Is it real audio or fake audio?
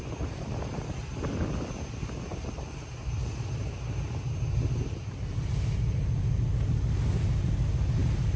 real